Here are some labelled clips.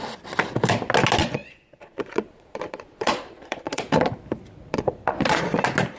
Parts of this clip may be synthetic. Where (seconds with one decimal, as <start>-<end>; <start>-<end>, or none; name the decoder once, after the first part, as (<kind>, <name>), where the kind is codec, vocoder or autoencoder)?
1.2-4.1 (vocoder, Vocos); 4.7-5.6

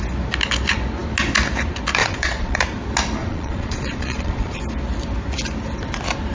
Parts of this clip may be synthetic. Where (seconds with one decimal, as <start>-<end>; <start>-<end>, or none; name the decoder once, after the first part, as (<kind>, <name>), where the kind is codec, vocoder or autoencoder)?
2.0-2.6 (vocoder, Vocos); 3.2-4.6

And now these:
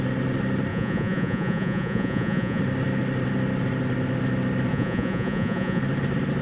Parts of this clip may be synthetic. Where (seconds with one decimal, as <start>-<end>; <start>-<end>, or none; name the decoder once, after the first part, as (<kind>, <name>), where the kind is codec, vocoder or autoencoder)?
0.7-2.6 (vocoder, Vocos); 4.7-5.8